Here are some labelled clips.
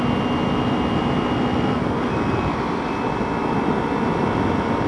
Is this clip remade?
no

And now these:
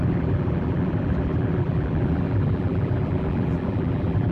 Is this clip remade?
yes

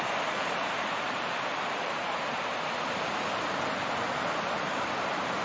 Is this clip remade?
yes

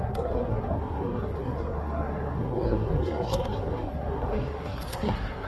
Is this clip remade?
yes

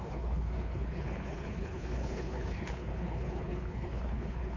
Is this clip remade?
yes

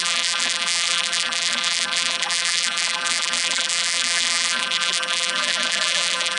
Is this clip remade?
yes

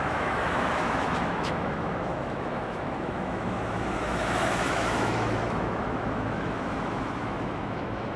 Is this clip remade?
yes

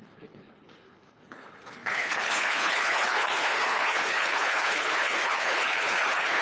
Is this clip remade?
yes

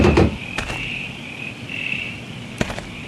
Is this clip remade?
yes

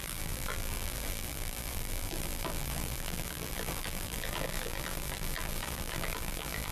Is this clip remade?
yes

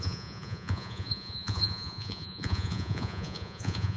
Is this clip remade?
yes